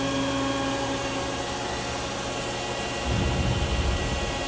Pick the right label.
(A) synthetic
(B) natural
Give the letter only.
B